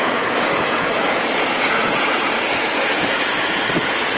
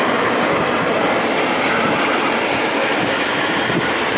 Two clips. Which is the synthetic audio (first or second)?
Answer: first